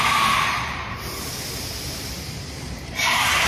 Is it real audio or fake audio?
fake